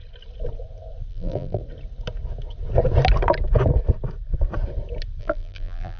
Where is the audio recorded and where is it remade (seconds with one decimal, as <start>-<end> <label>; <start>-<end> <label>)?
0.0-1.1 recorded; 1.1-1.6 remade; 1.6-5.2 recorded; 5.2-6.0 remade